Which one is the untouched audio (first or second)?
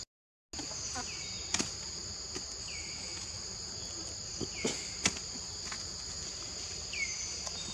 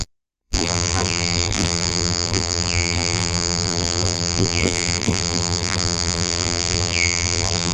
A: first